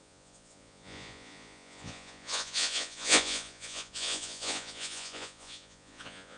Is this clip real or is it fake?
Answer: fake